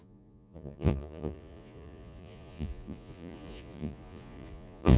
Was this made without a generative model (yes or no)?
no